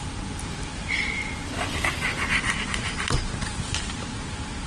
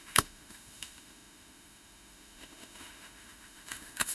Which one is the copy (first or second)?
second